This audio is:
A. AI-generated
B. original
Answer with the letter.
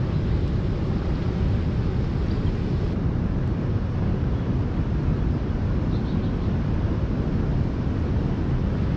B